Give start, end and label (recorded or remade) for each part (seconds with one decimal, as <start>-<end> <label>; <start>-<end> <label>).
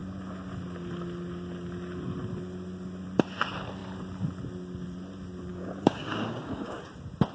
0.0-5.5 recorded; 5.5-6.8 remade; 6.8-7.3 recorded